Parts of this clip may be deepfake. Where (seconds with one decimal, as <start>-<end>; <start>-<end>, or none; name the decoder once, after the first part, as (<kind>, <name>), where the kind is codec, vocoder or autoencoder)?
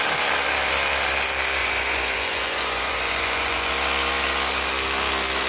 1.6-3.7 (vocoder, Vocos)